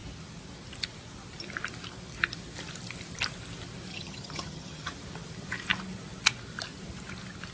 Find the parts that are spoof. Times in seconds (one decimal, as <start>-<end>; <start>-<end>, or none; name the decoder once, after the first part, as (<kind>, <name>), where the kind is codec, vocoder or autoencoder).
3.9-4.9 (vocoder, HiFi-GAN)